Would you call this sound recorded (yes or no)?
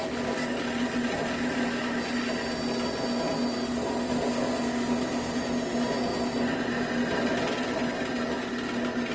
yes